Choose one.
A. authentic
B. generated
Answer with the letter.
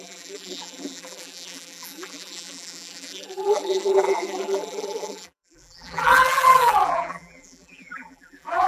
B